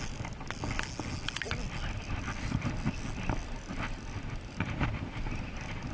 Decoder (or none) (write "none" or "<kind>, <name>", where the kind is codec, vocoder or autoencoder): none